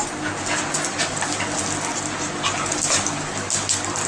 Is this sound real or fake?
real